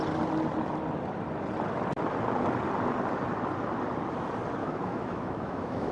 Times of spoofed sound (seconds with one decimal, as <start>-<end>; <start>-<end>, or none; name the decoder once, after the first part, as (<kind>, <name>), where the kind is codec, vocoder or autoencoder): 4.6-5.9 (autoencoder, DAC-VAE)